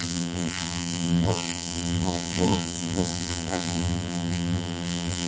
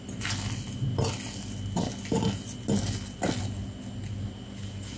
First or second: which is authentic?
second